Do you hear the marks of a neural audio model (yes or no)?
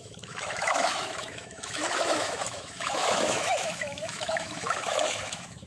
yes